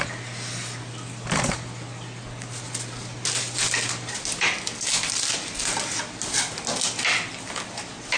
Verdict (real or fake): real